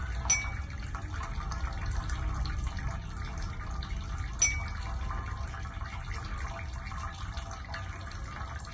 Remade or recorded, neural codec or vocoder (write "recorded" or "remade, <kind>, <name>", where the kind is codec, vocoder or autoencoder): recorded